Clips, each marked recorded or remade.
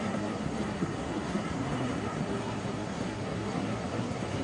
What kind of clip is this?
remade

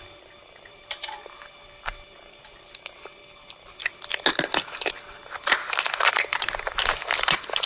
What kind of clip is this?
recorded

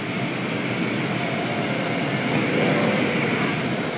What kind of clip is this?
recorded